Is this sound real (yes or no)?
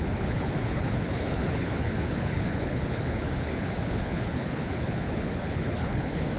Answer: no